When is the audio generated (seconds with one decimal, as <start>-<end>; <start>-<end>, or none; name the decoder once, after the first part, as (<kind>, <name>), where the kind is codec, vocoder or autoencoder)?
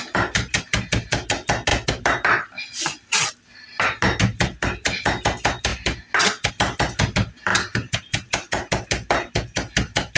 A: none